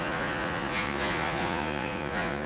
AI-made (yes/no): yes